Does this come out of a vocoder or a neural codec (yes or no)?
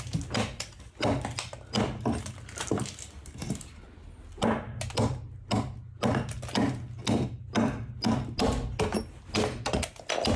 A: no